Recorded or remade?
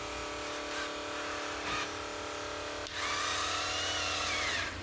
recorded